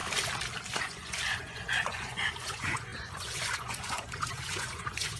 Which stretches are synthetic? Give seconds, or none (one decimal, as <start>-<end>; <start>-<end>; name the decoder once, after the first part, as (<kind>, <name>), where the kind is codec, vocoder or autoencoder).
0.8-5.2 (vocoder, Vocos)